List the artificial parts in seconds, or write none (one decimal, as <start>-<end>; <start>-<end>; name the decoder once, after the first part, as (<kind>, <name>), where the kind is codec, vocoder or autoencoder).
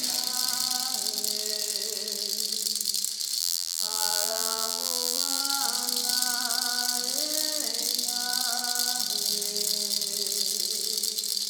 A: 3.4-5.4 (vocoder, BigVGAN v2)